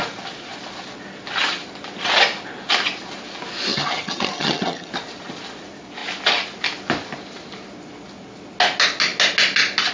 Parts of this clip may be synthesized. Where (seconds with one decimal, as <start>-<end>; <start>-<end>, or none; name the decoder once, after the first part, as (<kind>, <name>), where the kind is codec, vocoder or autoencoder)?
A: 3.7-4.9 (vocoder, HiFi-GAN)

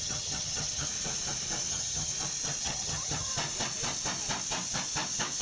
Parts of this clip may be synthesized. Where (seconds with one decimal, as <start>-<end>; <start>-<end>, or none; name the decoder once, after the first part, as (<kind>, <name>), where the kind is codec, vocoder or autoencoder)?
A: 0.0-0.9 (vocoder, HiFi-GAN); 1.7-2.1; 2.6-3.3

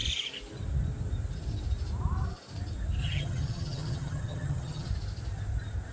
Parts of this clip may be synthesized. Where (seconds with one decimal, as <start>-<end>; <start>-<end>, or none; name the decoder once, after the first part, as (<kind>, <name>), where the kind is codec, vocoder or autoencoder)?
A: 3.0-4.9 (vocoder, HiFi-GAN)